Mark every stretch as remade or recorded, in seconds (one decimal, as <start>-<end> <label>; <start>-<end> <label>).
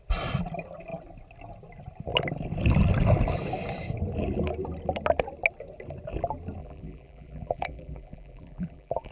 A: 0.0-6.6 recorded; 6.6-9.1 remade